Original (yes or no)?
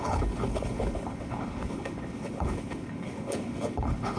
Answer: no